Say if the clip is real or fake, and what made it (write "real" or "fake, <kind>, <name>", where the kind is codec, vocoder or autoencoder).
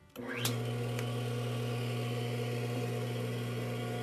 real